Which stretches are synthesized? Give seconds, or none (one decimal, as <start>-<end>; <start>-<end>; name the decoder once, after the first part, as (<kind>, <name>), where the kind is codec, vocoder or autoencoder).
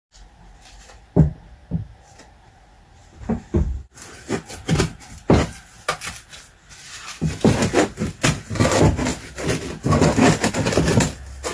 1.6-2.5 (vocoder, BigVGAN v2)